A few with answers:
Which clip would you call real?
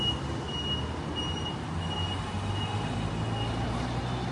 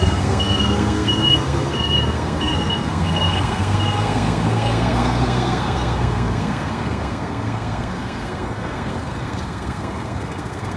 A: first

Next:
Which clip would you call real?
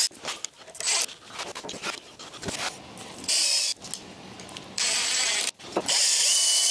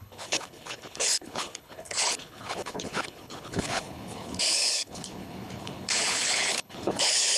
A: first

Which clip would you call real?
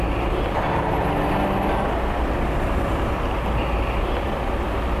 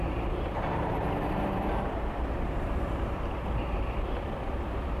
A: first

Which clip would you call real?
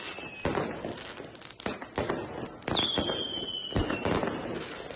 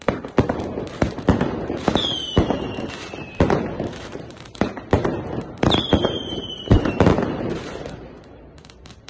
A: first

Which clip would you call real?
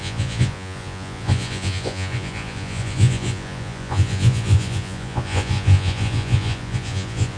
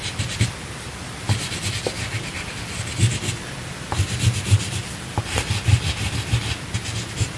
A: second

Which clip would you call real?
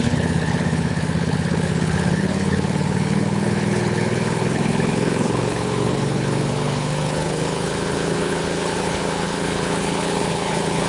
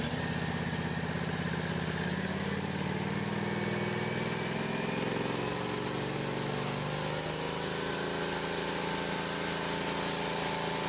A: second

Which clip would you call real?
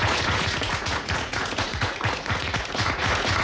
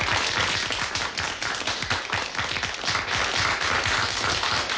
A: second